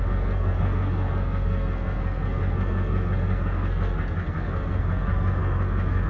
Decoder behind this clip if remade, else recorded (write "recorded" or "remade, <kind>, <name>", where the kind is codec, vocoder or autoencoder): remade, codec, SNAC